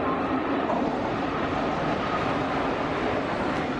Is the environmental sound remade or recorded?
recorded